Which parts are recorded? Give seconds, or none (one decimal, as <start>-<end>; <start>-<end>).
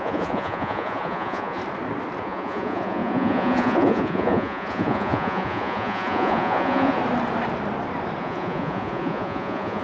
1.6-2.2; 7.0-8.2